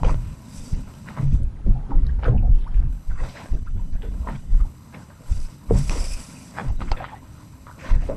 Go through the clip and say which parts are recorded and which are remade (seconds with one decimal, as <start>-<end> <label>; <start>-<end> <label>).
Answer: 0.0-1.4 remade; 1.4-2.9 recorded; 2.9-8.2 remade